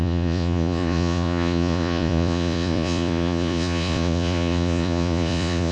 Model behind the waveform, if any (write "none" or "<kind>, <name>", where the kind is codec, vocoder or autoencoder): vocoder, Vocos